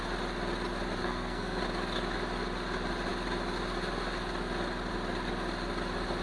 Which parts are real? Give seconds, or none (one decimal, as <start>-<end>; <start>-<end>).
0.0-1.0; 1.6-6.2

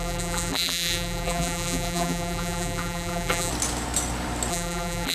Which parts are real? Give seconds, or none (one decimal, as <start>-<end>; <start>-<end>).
3.5-4.5

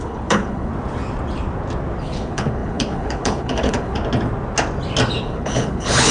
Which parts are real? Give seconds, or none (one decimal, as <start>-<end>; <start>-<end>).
0.7-2.0; 4.0-5.2

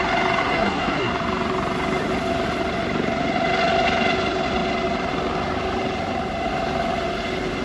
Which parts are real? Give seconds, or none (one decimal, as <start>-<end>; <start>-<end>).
0.0-0.4; 1.1-7.6

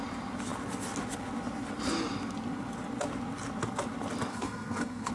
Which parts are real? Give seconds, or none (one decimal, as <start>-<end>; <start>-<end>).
0.0-4.3